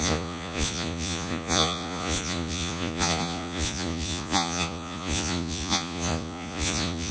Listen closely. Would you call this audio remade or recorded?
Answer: remade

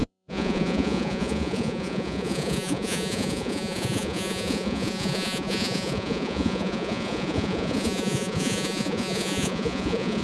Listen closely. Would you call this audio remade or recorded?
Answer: remade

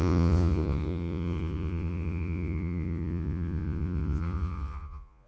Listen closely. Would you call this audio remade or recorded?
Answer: remade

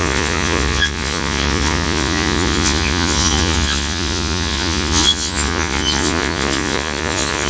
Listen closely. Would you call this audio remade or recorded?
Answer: remade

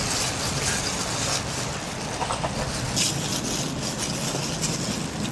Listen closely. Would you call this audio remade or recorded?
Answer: recorded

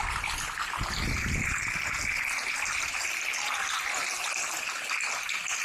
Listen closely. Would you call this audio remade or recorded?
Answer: recorded